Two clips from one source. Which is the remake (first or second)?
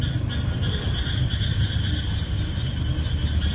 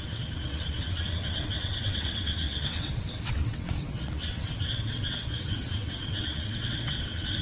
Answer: second